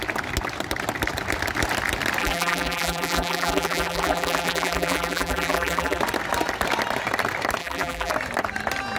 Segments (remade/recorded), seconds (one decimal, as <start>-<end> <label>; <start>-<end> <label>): 0.0-2.2 recorded; 2.2-6.0 remade; 6.0-7.6 recorded; 7.6-8.1 remade; 8.1-9.0 recorded